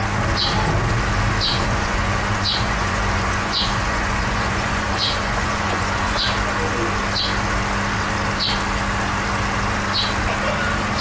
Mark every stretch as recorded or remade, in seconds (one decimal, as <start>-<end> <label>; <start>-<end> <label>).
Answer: 0.0-1.5 recorded; 1.5-6.2 remade; 6.2-11.0 recorded